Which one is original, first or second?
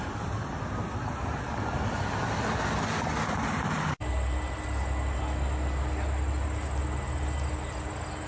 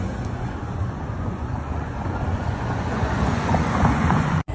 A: first